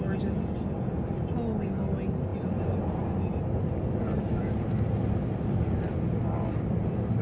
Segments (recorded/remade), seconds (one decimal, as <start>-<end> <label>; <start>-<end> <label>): 0.0-7.2 recorded